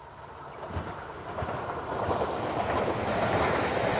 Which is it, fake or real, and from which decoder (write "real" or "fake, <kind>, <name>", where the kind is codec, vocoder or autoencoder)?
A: real